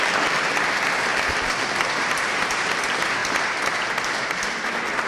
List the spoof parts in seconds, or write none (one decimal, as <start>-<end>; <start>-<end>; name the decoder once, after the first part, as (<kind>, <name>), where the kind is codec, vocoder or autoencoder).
1.1-2.7 (vocoder, BigVGAN v2)